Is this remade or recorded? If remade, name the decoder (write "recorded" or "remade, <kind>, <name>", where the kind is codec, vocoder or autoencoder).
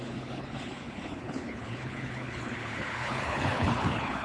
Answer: remade, codec, HILCodec